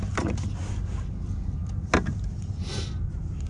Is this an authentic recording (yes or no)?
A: yes